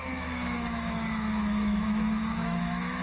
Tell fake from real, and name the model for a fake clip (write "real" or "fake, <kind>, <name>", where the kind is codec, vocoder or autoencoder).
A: fake, autoencoder, DAC-VAE